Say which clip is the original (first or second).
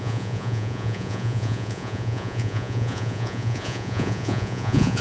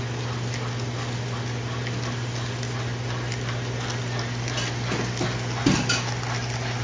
second